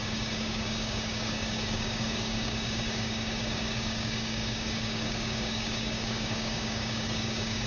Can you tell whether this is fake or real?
fake